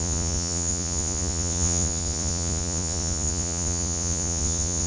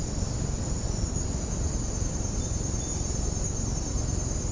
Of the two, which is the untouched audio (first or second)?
second